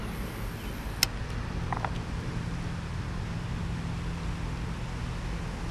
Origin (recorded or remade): recorded